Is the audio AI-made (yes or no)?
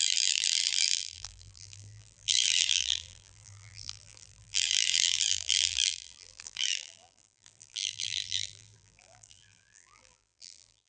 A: yes